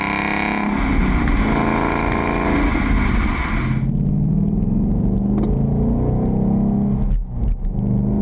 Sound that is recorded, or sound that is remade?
recorded